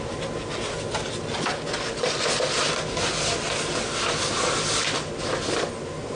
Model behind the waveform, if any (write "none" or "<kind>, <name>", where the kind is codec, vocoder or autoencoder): none